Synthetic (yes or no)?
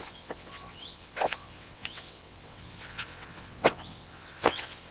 yes